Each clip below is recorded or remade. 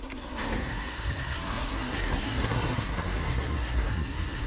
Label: remade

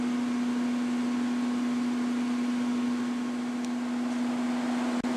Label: recorded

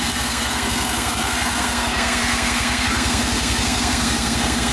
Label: remade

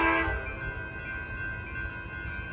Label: recorded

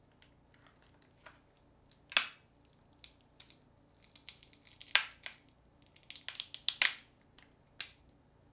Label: recorded